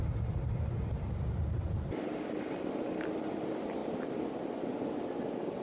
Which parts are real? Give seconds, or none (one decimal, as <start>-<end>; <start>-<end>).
0.0-5.6